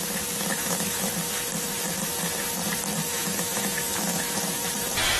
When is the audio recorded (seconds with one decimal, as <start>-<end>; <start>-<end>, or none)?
0.0-0.5; 1.1-3.0; 4.2-5.2